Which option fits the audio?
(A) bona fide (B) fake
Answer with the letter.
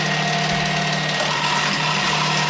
A